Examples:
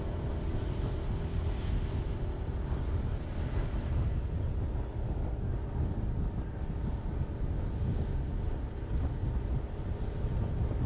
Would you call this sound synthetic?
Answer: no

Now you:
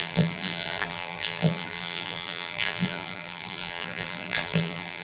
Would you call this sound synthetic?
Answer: yes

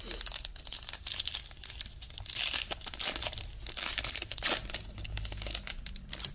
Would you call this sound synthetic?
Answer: no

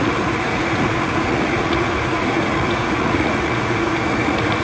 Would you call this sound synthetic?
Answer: yes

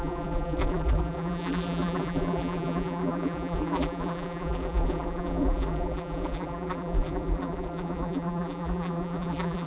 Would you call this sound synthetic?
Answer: yes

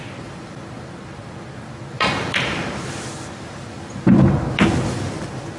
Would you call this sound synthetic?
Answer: yes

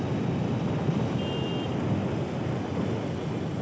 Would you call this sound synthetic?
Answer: no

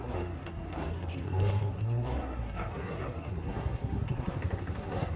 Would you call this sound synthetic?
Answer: yes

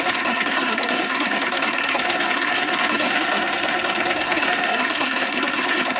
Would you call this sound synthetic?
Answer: yes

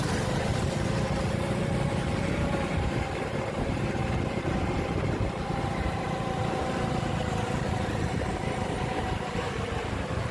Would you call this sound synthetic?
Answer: yes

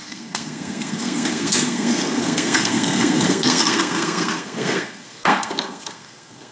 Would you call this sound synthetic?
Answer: yes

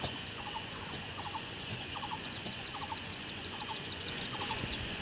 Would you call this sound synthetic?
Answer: yes